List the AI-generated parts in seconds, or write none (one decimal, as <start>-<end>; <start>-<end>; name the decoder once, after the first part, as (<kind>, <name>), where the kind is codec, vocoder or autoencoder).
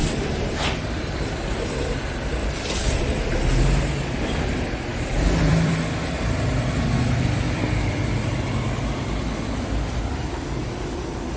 0.0-1.2 (vocoder, BigVGAN v2); 2.4-3.0; 4.9-8.5